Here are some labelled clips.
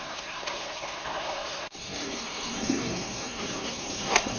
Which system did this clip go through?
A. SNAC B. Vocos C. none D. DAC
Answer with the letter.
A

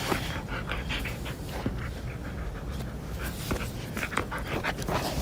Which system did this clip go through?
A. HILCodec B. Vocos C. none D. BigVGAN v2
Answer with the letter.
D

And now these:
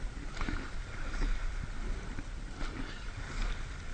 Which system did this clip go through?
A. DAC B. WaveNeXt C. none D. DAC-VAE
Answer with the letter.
C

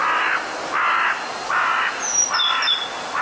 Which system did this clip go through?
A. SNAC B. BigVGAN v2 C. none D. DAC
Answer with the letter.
C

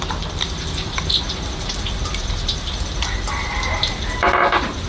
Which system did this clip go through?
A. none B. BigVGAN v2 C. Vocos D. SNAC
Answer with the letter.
B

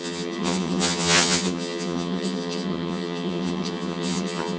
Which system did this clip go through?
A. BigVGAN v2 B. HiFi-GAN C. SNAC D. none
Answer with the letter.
B